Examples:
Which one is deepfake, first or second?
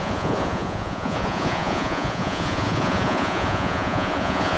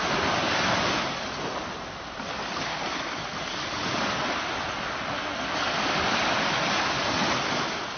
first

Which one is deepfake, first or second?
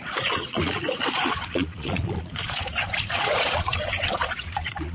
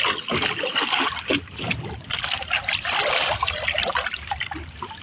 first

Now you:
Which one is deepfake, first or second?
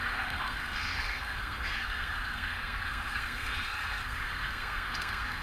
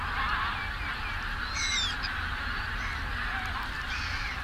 first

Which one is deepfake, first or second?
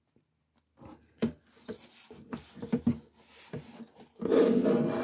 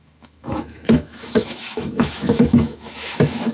second